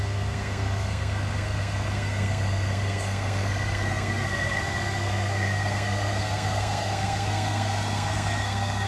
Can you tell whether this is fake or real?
fake